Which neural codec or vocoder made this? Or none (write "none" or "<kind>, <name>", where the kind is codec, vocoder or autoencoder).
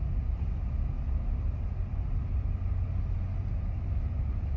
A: none